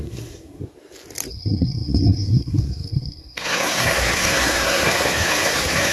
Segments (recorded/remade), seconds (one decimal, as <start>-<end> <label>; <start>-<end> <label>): 0.0-0.7 remade; 0.7-1.3 recorded; 1.3-5.9 remade